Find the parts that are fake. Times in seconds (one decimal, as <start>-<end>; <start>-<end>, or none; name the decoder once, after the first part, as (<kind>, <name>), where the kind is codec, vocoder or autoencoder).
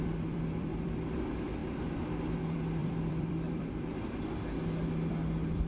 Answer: 0.0-3.9 (vocoder, BigVGAN v2); 5.1-5.7